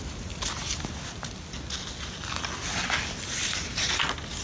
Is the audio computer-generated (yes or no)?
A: no